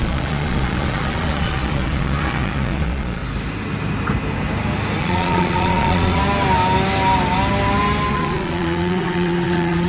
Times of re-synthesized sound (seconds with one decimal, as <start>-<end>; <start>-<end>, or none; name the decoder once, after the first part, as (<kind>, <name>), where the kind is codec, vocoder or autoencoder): 0.0-3.2 (vocoder, Vocos); 5.0-6.2; 8.1-9.9